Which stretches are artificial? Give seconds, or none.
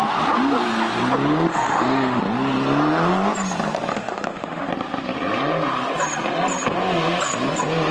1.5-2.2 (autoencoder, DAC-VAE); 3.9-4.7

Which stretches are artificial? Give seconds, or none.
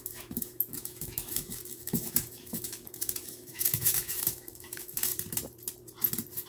0.0-5.1 (autoencoder, DAC-VAE)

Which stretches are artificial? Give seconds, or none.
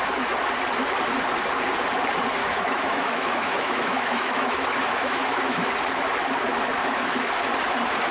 2.4-5.7 (autoencoder, DAC-VAE); 6.8-7.3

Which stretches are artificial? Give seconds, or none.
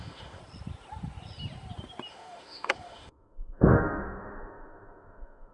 0.0-0.4 (autoencoder, DAC-VAE); 2.1-5.5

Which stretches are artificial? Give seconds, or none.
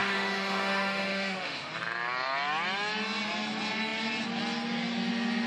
0.0-1.7 (autoencoder, DAC-VAE)